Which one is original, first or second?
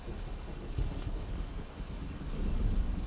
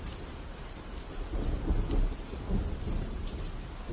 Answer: second